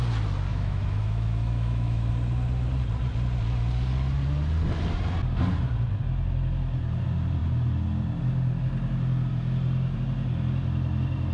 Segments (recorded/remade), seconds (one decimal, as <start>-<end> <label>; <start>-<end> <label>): 0.0-0.5 recorded; 0.5-2.1 remade; 2.1-11.3 recorded